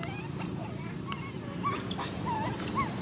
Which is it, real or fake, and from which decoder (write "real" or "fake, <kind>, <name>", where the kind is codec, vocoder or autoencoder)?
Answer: real